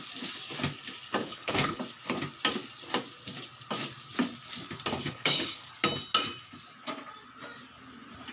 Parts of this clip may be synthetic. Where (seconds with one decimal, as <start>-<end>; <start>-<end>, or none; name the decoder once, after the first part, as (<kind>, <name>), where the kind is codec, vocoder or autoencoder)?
1.2-1.8 (codec, HILCodec); 5.0-5.7